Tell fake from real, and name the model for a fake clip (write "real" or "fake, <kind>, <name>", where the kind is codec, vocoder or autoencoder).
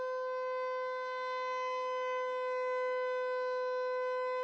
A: real